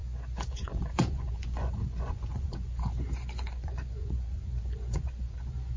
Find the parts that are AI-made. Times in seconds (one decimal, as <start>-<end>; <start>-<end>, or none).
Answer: 0.0-5.8